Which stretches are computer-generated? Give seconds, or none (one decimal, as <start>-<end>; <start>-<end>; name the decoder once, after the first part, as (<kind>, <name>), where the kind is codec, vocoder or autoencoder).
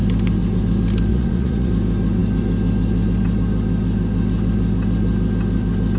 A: 1.1-1.7 (vocoder, Vocos)